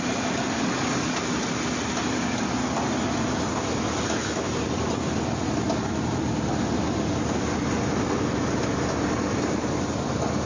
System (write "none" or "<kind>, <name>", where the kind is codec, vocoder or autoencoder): none